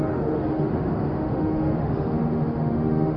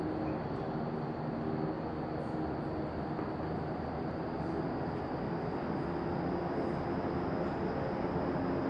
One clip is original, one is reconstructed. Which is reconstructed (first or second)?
first